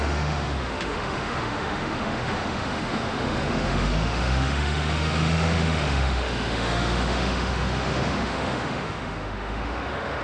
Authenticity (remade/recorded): remade